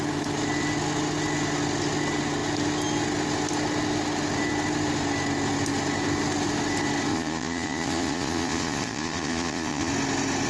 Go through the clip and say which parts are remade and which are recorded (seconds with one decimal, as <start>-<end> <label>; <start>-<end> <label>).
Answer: 0.0-7.1 recorded; 7.1-9.9 remade; 9.9-10.5 recorded